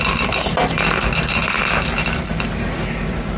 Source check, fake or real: real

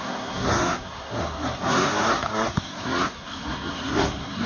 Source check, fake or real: fake